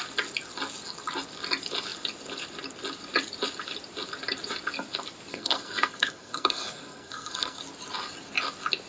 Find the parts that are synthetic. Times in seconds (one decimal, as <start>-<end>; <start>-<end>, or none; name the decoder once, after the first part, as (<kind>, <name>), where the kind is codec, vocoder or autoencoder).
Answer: 5.3-7.6 (codec, SNAC)